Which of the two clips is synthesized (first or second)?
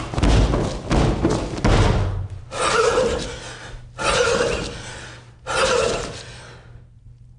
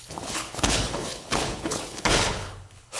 second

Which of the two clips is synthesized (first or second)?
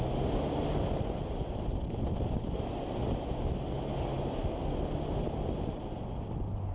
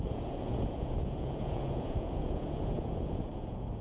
second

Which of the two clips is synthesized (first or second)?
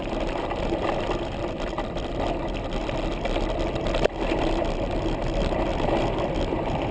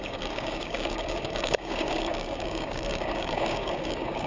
second